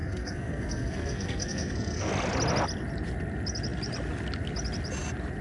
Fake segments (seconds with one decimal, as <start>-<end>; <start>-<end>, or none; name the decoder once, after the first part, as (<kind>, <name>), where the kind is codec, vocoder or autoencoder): 0.0-2.1 (codec, SNAC)